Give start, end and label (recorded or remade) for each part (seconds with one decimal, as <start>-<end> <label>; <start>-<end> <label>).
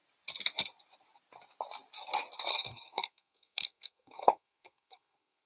0.0-2.5 recorded; 2.5-5.5 remade